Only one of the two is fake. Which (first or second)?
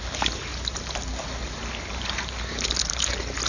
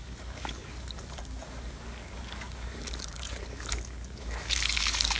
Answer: second